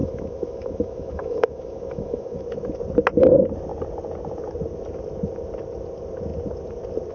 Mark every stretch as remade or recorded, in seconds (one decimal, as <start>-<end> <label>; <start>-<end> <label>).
0.0-2.4 remade; 2.4-7.1 recorded